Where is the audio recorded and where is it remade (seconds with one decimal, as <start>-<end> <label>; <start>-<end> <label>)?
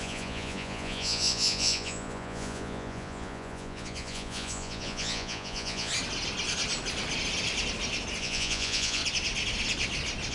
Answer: 0.0-5.9 remade; 5.9-8.2 recorded; 8.2-9.0 remade; 9.0-10.3 recorded